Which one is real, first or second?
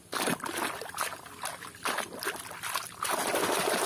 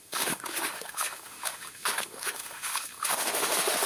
first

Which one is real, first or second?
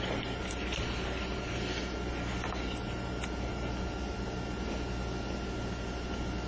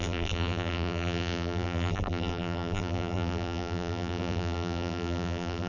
first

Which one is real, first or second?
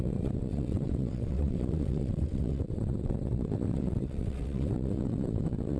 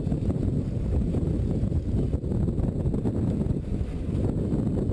second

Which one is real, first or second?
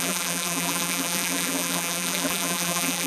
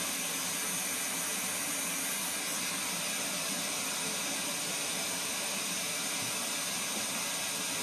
second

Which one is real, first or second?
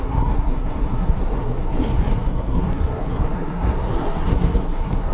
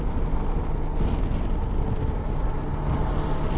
second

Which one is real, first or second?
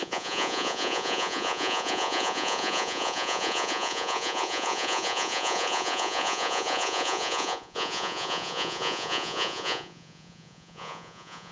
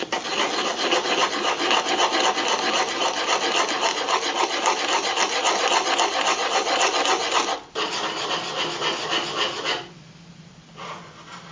second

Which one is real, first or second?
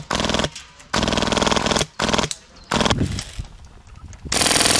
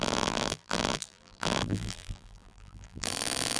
first